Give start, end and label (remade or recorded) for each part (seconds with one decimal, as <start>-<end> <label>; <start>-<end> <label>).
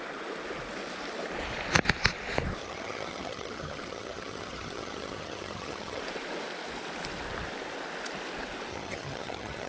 0.0-2.6 recorded; 2.6-6.0 remade; 6.0-8.7 recorded; 8.7-9.7 remade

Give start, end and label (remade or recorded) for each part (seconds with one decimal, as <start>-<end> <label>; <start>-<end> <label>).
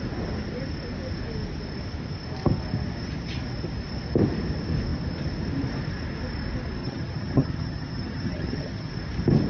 0.0-6.8 recorded; 6.8-8.9 remade; 8.9-9.5 recorded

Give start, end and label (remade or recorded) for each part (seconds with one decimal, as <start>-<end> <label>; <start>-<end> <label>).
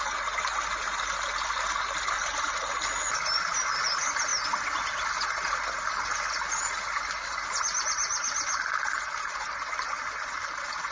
0.0-10.9 recorded